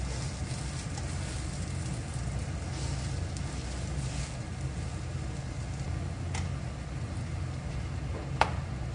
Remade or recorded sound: recorded